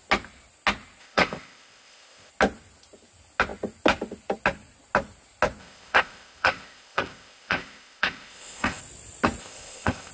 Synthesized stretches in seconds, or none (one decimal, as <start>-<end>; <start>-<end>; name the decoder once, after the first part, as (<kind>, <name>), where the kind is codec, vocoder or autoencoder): 1.0-2.3 (codec, ZipCodec); 5.6-8.8; 9.4-10.1